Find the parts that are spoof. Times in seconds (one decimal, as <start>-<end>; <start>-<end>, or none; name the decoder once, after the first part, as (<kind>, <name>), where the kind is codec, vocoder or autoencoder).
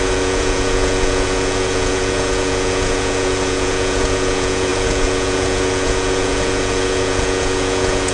0.0-8.1 (vocoder, Vocos)